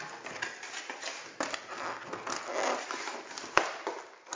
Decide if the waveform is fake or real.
real